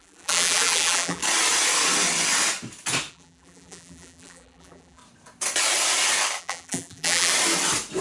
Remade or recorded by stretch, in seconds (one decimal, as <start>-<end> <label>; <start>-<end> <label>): 0.0-1.2 remade; 1.2-3.1 recorded; 3.1-5.0 remade; 5.0-6.4 recorded; 6.4-7.3 remade; 7.3-8.0 recorded